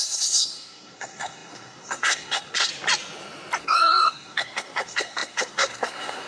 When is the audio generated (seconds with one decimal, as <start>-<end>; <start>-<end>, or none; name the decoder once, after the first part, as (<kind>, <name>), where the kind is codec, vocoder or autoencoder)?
0.0-2.7 (codec, SNAC); 3.6-6.3